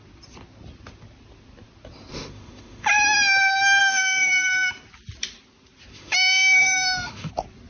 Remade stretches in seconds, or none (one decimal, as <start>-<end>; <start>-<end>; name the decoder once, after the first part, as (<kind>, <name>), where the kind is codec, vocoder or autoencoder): 2.1-2.9 (autoencoder, DAC-VAE); 3.8-4.7; 5.9-7.3